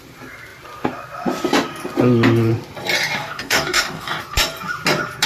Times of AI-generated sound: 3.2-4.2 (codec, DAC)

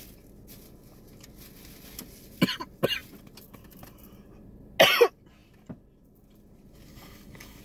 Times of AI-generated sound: 6.9-7.6 (codec, DAC)

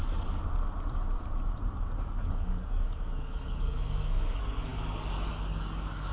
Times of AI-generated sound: 2.2-6.1 (codec, DAC)

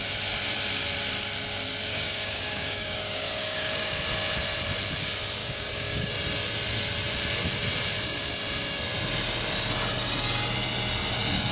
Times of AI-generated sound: 1.9-4.0 (codec, DAC); 5.4-6.1